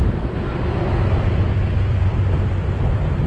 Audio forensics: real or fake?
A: fake